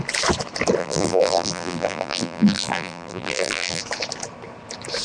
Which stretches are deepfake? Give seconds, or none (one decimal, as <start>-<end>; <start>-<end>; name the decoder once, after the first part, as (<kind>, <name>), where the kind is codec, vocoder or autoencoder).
0.8-3.8 (vocoder, BigVGAN v2)